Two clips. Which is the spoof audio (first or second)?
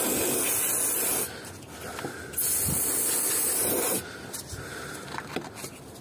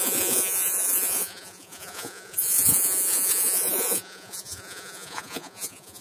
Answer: second